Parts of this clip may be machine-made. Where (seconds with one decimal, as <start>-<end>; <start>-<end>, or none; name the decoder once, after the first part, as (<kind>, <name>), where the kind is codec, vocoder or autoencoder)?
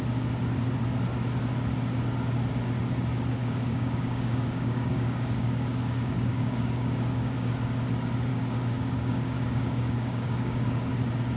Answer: 3.4-7.5 (codec, DAC); 8.3-10.9